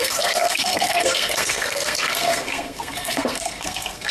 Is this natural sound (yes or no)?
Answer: no